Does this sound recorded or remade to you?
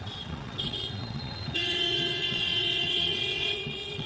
remade